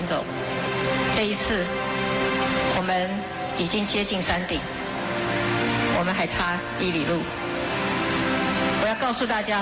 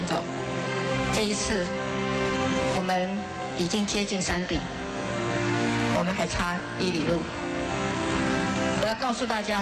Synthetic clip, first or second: second